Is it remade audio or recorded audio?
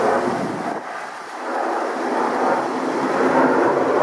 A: recorded